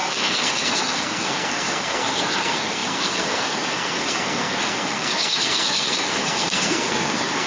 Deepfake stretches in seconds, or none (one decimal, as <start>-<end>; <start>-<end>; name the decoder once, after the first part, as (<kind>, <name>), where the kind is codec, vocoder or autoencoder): 0.0-7.5 (codec, SNAC)